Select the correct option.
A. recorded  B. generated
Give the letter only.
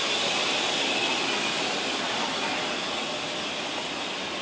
A